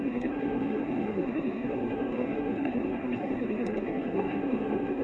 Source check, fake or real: fake